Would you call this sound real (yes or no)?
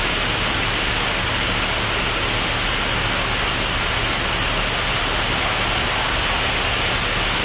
yes